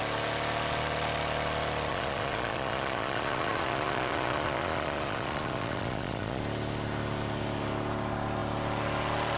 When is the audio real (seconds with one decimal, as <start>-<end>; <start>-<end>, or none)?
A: 0.0-1.9; 6.4-9.4